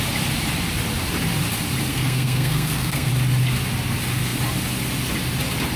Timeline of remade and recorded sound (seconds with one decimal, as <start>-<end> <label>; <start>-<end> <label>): 0.0-1.9 recorded; 1.9-3.1 remade; 3.1-5.8 recorded